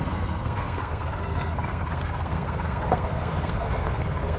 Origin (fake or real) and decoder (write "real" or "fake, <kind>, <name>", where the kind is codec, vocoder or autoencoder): fake, codec, SNAC